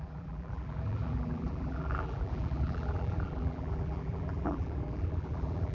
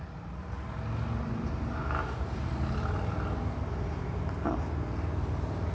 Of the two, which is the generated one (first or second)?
first